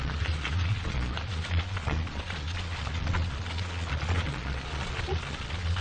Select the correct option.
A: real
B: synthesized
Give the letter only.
B